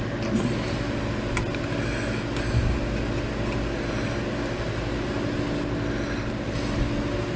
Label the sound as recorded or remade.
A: recorded